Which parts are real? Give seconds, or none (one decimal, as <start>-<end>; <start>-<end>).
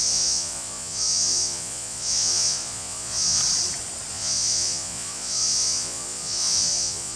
3.4-4.1